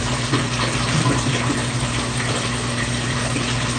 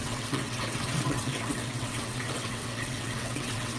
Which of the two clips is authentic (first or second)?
first